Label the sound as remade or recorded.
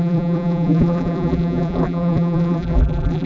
remade